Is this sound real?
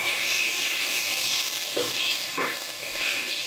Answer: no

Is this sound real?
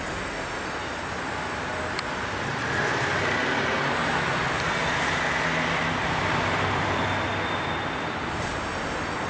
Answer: yes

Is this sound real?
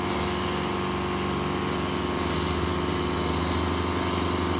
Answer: yes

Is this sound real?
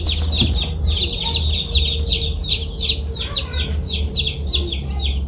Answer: yes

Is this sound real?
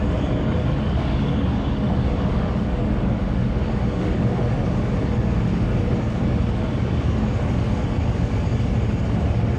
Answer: no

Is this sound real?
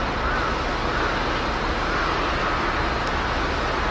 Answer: yes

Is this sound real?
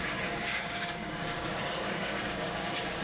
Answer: no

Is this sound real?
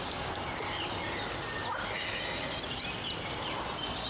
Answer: yes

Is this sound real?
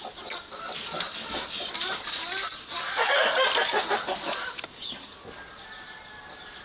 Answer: yes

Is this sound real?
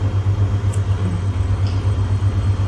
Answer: yes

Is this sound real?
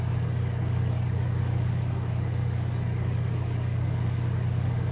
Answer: no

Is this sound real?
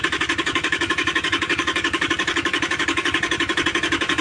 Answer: no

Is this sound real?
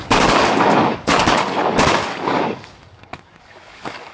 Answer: no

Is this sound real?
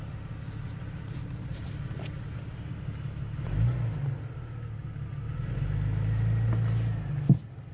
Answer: yes